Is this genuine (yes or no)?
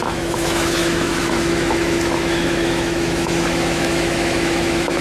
no